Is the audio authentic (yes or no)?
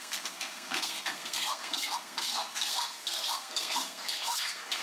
no